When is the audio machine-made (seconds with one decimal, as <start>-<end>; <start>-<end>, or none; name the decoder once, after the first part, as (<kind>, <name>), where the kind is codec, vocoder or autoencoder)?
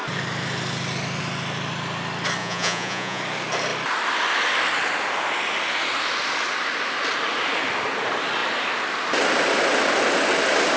2.4-3.2 (vocoder, Vocos)